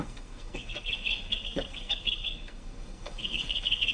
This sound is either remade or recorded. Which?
remade